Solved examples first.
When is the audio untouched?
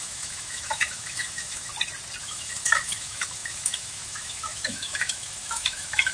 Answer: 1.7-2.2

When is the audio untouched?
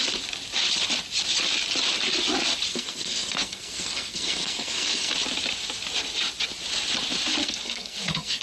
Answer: 0.0-2.7; 5.1-7.4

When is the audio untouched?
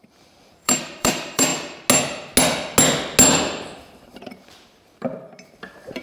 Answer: 1.5-4.1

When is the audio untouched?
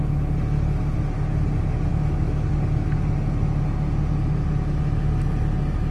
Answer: 0.0-1.9; 2.5-5.9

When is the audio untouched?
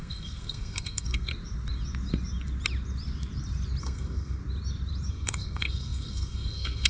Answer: 1.3-3.8; 4.4-5.1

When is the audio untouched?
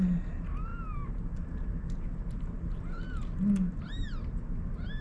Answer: 0.0-5.0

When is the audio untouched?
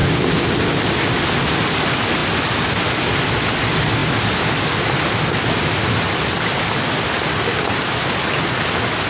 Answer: 0.0-9.1